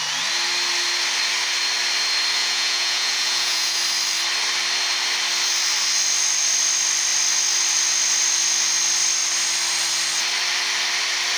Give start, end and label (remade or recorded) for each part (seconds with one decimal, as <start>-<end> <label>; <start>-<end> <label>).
0.0-2.4 recorded; 2.4-3.8 remade; 3.8-11.4 recorded